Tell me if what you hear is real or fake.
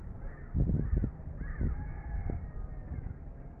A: real